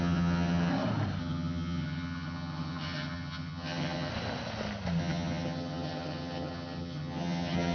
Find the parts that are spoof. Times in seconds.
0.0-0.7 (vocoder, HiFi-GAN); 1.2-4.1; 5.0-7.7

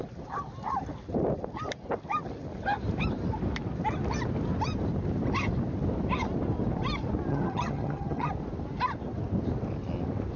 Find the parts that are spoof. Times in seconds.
7.3-8.3 (vocoder, HiFi-GAN)